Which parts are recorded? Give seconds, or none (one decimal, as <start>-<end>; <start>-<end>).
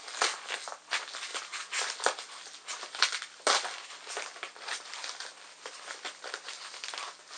0.0-7.4